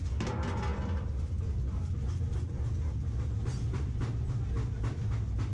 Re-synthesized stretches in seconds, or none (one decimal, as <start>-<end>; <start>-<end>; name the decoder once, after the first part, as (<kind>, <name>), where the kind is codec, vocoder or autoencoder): none

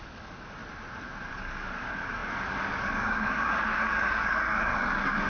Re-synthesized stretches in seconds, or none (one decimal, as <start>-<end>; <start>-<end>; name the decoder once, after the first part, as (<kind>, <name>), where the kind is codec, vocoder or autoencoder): 0.0-0.6 (codec, DAC); 1.3-5.3

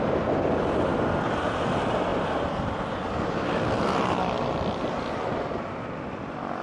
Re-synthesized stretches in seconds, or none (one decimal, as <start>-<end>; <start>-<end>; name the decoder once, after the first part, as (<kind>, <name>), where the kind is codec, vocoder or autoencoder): none

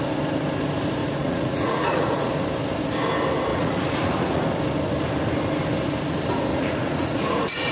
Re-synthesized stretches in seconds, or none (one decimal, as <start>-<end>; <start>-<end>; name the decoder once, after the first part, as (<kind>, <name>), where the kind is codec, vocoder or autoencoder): 1.0-2.3 (vocoder, Vocos); 3.5-4.4; 6.5-7.7

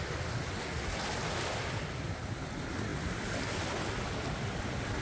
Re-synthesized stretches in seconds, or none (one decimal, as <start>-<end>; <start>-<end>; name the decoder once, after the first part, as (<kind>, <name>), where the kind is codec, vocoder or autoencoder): none

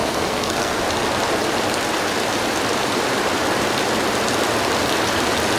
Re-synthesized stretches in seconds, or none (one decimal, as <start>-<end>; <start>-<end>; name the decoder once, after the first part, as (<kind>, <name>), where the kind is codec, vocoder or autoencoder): 0.0-0.8 (codec, SNAC)

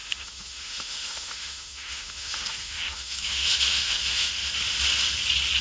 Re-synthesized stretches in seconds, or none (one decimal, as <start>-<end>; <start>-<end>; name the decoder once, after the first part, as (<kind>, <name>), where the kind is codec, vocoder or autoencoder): 0.0-4.4 (autoencoder, DAC-VAE)